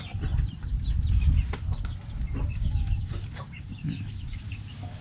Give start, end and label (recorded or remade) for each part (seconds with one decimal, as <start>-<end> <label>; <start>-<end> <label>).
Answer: 0.0-2.5 recorded; 2.5-5.0 remade